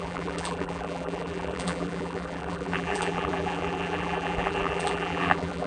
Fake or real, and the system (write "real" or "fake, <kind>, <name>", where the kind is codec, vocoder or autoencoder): fake, vocoder, BigVGAN v2